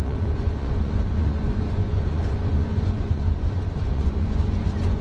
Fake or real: fake